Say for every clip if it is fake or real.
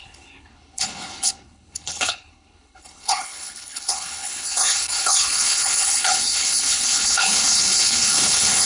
fake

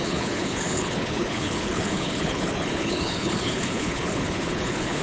fake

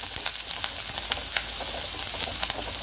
real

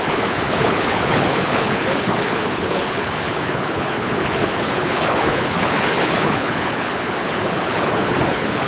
fake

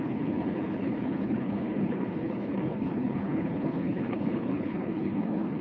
fake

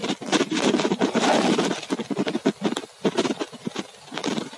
real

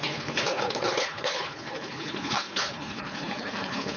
fake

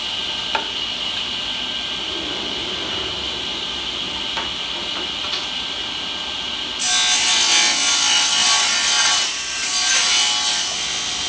real